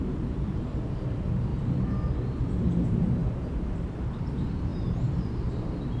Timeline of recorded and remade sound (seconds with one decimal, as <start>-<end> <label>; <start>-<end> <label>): 0.0-1.5 remade; 1.5-2.6 recorded; 2.6-6.0 remade